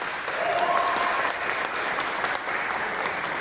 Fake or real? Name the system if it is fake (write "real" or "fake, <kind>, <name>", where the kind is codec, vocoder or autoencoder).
real